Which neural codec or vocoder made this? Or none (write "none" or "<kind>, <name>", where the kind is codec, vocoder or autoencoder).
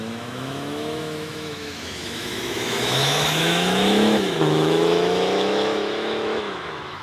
autoencoder, DAC-VAE